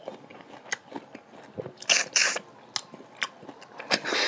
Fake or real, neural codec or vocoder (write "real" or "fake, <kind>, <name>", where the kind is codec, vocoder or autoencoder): real